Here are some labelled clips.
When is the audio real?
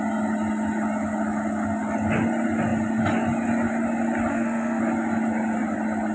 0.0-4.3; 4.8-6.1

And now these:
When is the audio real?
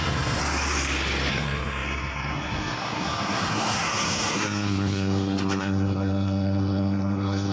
0.4-1.3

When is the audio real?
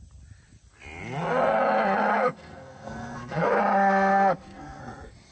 0.0-2.1; 3.6-4.1; 4.8-5.3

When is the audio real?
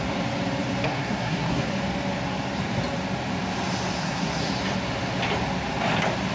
0.0-0.9; 1.7-4.0; 4.5-6.3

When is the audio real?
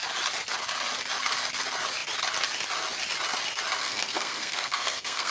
0.0-3.8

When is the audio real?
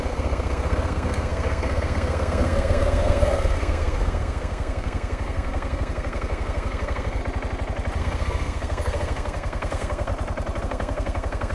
7.2-8.0; 10.1-10.6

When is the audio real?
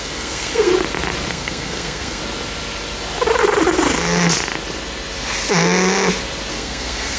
0.7-1.3; 2.2-6.5